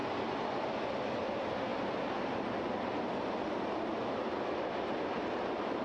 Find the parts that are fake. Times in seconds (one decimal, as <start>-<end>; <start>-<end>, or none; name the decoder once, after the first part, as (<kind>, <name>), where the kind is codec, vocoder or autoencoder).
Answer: none